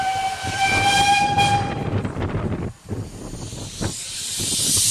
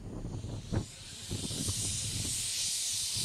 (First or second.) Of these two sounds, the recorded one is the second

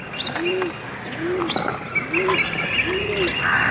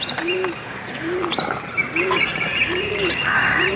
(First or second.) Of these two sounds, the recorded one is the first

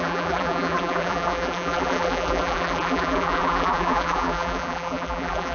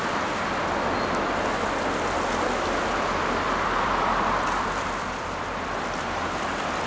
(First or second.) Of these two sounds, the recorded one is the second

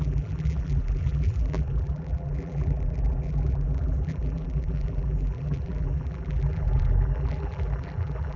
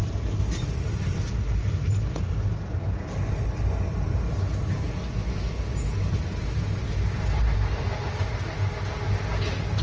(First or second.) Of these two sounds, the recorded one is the second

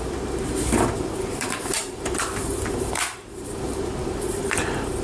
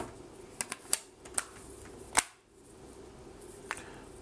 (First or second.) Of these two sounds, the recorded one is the second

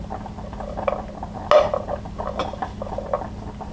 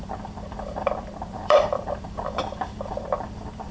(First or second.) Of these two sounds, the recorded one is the first